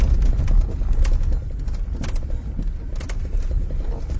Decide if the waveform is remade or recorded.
recorded